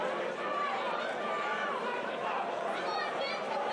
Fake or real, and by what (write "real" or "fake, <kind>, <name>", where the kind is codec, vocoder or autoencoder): real